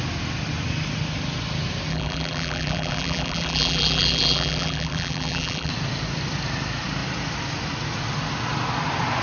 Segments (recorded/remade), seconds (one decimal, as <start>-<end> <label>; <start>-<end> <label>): 0.0-1.9 recorded; 1.9-5.7 remade; 5.7-9.2 recorded